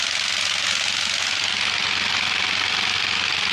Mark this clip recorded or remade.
recorded